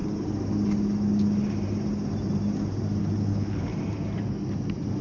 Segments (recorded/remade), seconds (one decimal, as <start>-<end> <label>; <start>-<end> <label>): 0.0-3.0 recorded; 3.0-3.7 remade; 3.7-5.0 recorded